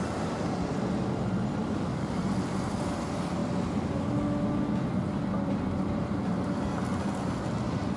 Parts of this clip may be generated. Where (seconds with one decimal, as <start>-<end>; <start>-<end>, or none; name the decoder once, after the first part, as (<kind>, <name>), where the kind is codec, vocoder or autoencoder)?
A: 1.6-2.2 (codec, DAC)